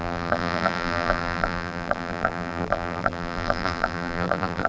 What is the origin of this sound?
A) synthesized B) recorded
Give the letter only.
A